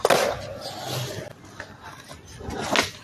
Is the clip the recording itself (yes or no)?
yes